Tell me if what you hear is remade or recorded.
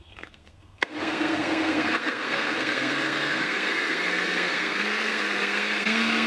remade